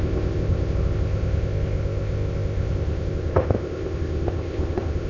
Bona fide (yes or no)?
no